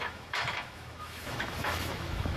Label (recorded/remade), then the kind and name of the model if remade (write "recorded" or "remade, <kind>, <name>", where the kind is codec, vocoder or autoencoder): remade, autoencoder, DAC-VAE